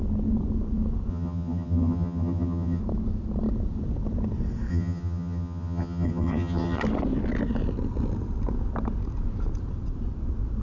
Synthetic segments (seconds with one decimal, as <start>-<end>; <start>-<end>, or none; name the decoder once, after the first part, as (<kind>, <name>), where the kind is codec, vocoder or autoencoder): 1.1-2.8 (vocoder, HiFi-GAN); 4.7-6.8